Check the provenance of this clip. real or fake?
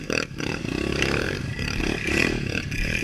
fake